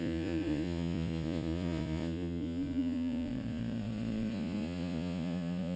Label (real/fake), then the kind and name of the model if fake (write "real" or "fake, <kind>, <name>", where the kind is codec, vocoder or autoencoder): fake, vocoder, Vocos